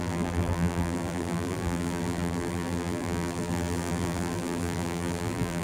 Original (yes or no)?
no